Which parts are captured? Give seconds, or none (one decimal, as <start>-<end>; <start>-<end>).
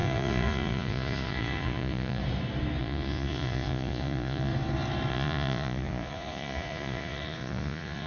2.2-2.8; 4.5-5.1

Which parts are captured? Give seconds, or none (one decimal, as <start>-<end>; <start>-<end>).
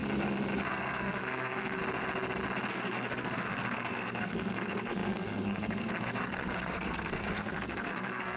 0.0-0.7; 1.8-2.7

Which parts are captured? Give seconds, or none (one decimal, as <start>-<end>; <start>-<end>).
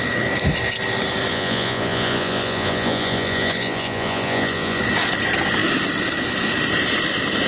0.0-1.3; 4.8-7.5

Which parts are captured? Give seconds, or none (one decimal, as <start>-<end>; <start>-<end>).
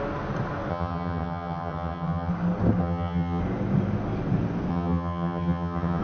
0.0-0.7; 2.3-2.8; 3.4-4.7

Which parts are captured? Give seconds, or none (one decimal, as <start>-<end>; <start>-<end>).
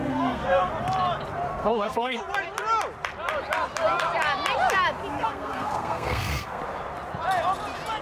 0.7-1.5; 2.2-5.2; 6.6-8.0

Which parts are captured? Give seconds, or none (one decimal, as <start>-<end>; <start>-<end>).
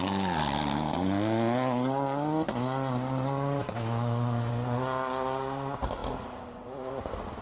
0.0-3.6; 4.5-7.4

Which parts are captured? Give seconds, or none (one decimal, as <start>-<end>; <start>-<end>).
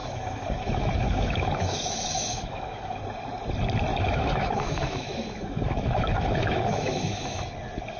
3.0-3.9; 7.4-8.0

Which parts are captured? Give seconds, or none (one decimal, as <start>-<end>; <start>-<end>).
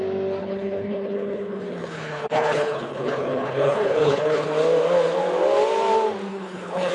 0.0-0.4; 4.5-6.3